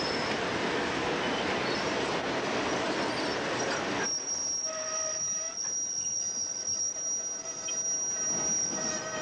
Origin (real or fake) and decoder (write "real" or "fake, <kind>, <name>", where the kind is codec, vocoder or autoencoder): real